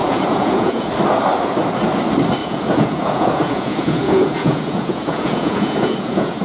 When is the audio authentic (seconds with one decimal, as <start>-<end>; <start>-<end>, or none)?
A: 0.9-2.4